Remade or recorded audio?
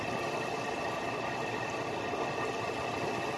recorded